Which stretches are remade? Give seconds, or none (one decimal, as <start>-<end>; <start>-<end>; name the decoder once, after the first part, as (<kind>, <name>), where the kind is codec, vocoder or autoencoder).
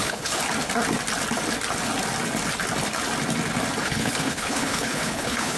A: 0.0-0.4 (codec, HILCodec); 3.8-5.6